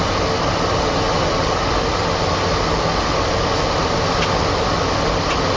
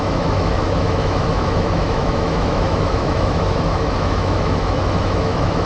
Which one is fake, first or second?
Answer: second